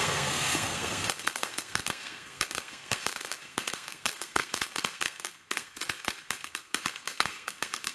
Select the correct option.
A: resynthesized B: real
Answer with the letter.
A